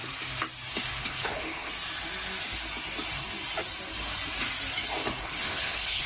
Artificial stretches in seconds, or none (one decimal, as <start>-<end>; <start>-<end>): 1.0-1.7; 5.2-6.1